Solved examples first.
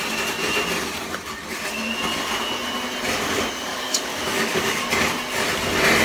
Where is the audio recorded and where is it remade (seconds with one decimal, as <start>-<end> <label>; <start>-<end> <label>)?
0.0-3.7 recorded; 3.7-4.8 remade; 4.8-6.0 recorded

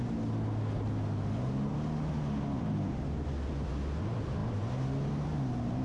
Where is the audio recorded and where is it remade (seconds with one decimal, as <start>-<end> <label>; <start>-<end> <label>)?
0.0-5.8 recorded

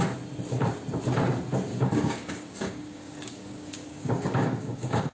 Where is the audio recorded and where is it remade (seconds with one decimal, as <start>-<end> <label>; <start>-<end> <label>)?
0.0-1.7 recorded; 1.7-5.1 remade

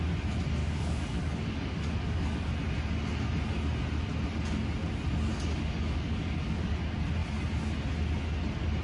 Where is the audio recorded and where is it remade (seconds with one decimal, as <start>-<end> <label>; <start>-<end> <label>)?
0.0-0.6 recorded; 0.6-2.5 remade; 2.5-5.3 recorded; 5.3-6.7 remade; 6.7-8.8 recorded